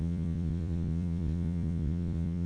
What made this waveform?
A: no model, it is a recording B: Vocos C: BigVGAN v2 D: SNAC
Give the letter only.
B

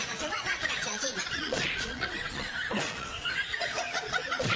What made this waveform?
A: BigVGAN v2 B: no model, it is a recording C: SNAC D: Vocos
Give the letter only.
D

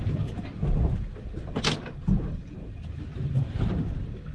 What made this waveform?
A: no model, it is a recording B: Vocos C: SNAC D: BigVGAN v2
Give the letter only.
A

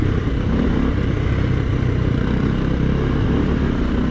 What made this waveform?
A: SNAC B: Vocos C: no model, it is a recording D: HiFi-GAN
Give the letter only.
C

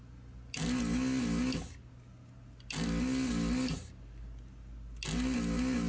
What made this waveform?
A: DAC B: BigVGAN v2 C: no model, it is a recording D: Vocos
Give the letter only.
C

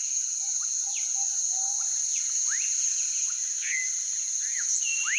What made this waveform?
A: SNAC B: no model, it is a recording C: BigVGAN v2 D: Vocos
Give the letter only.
B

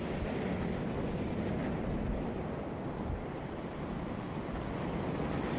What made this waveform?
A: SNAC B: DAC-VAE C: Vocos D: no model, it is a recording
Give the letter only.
D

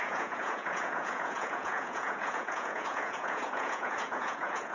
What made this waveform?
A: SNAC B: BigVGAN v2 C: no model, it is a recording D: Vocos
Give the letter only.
D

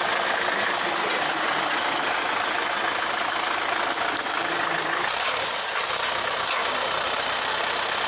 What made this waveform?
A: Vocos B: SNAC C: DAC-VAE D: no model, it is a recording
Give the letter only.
D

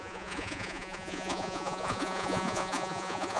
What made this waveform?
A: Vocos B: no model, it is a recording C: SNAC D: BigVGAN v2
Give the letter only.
A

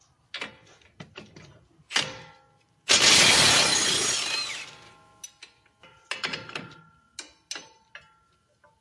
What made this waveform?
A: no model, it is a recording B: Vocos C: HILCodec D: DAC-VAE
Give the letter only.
A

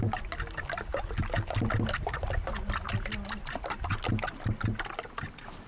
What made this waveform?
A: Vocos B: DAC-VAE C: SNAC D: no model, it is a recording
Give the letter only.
D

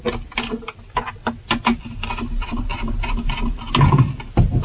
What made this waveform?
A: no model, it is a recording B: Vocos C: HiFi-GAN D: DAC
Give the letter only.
A